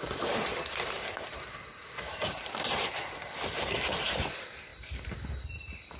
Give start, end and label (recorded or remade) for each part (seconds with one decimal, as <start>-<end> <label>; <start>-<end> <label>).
0.0-6.0 recorded